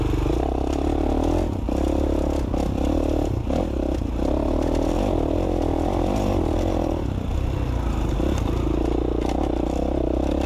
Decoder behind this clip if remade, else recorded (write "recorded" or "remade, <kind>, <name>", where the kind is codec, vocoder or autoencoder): recorded